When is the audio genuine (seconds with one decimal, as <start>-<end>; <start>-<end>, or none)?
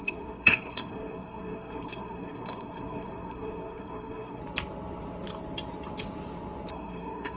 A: 4.4-6.7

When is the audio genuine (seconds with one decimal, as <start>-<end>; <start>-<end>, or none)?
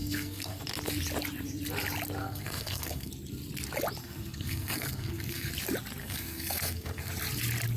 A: 0.6-2.2; 3.1-4.0; 5.5-6.0; 7.1-7.8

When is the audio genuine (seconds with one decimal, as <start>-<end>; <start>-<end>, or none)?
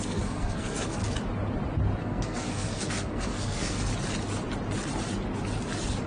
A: 1.0-2.0; 3.9-6.1